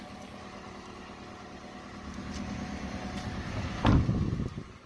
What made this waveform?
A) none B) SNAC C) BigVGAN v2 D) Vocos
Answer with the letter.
A